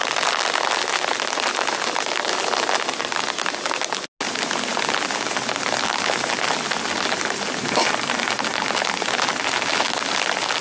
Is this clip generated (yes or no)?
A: no